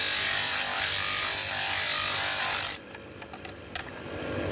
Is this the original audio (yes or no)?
yes